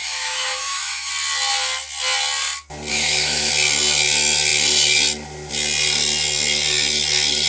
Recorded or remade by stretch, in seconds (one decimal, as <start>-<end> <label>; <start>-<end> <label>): 0.0-1.1 remade; 1.1-2.9 recorded; 2.9-3.5 remade; 3.5-7.5 recorded